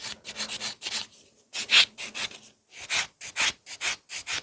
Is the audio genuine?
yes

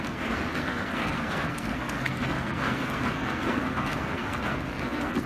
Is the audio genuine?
no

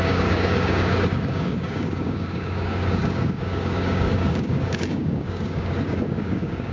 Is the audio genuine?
no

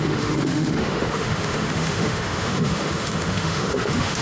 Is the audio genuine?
no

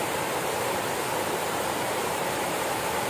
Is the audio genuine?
no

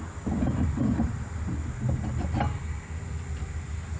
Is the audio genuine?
yes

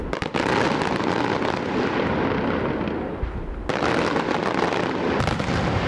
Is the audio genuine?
yes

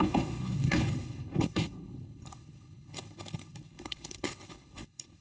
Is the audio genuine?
no